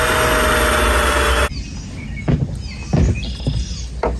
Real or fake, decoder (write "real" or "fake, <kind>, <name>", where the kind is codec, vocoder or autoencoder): real